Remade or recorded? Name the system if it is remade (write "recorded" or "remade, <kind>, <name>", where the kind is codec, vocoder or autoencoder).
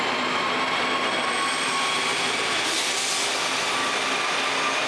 recorded